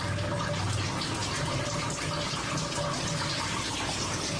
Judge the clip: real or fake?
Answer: real